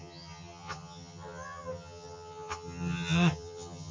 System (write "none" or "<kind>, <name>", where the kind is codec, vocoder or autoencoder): vocoder, HiFi-GAN